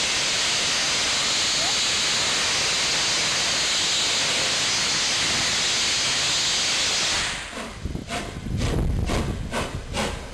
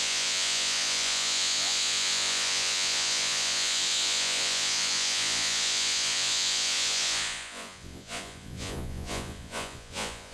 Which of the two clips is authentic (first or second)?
first